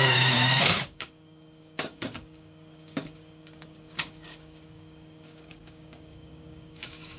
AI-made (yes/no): yes